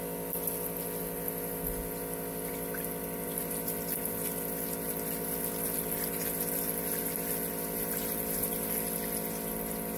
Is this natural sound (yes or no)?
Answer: yes